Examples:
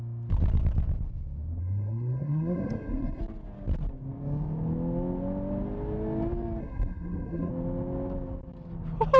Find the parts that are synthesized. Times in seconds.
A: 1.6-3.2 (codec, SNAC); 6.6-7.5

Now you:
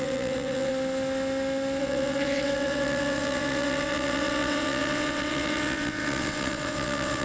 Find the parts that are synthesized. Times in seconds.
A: 0.0-0.7 (vocoder, WaveNeXt); 1.8-7.2

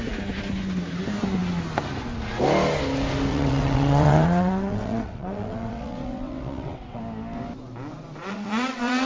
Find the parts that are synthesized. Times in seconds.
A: 3.3-7.0 (vocoder, WaveNeXt); 8.2-9.1

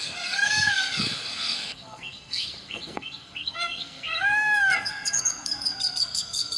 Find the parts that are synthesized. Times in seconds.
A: 0.0-6.6 (codec, SNAC)

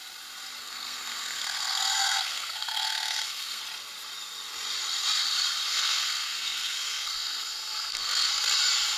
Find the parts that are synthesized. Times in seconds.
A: 0.6-3.6 (codec, SNAC); 5.7-8.3

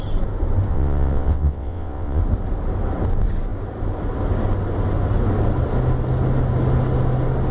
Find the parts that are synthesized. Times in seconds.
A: 0.7-2.2 (vocoder, WaveNeXt)